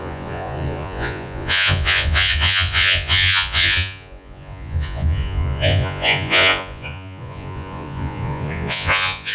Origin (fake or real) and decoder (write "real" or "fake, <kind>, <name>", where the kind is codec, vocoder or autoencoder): fake, vocoder, Vocos